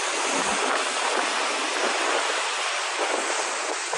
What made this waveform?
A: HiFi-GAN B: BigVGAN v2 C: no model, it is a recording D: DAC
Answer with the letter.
C